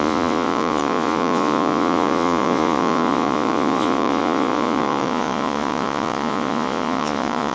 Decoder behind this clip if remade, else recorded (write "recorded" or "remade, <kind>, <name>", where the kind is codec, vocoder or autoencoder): remade, vocoder, Vocos